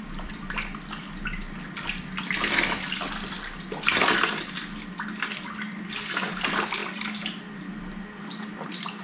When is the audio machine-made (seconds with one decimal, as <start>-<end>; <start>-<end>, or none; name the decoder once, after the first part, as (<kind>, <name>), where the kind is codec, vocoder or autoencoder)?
none